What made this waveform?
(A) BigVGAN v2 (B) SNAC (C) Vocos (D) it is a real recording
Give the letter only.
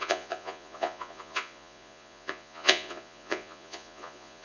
C